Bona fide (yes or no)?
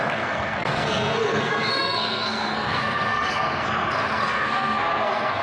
no